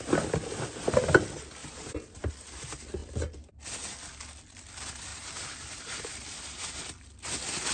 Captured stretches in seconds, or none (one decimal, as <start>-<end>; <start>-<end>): 0.0-1.6; 2.3-5.1; 6.8-7.7